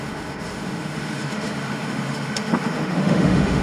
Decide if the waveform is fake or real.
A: fake